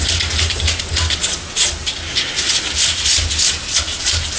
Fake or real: real